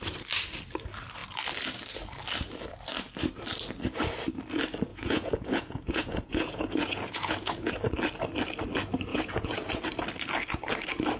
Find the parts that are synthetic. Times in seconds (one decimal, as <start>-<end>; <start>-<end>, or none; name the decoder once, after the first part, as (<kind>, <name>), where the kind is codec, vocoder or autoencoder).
4.9-7.7 (vocoder, Vocos); 9.1-9.8